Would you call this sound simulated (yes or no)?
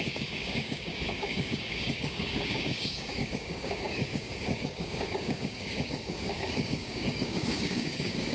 yes